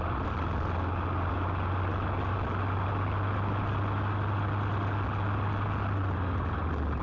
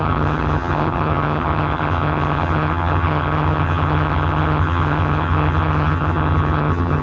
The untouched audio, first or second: first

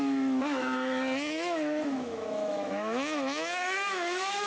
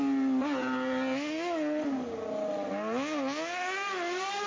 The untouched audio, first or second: second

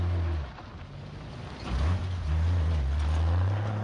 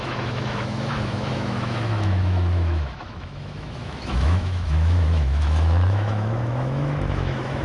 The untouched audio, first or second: first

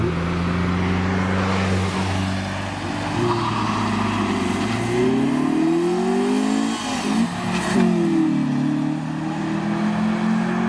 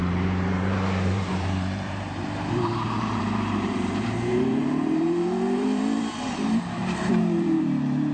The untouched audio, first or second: first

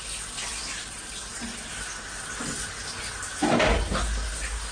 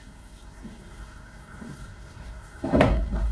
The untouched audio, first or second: first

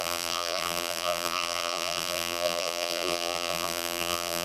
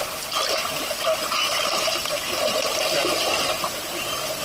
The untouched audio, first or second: second